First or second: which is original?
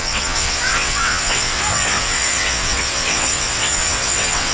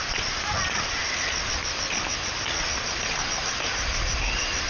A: second